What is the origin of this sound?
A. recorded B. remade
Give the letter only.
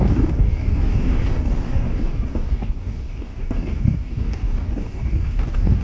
B